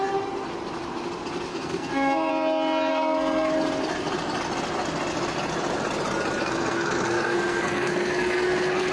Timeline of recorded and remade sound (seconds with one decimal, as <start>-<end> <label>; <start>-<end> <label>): 0.0-1.5 recorded; 1.5-2.3 remade; 2.3-2.9 recorded; 2.9-3.5 remade; 3.5-6.4 recorded; 6.4-8.9 remade